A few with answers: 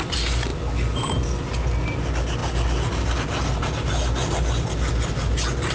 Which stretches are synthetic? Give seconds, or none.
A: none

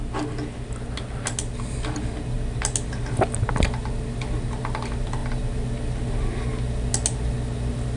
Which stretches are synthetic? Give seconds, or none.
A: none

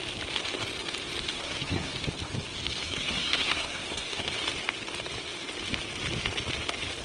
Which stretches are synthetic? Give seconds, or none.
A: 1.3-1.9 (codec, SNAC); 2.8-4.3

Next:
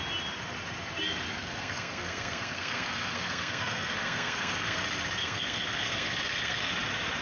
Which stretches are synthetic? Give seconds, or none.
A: 1.4-4.8 (codec, SNAC); 5.2-6.7

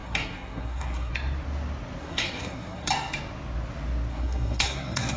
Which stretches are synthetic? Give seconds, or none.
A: 0.0-1.1 (codec, SNAC); 2.0-2.9; 4.1-5.2